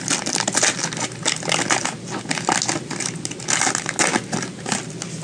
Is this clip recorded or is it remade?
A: recorded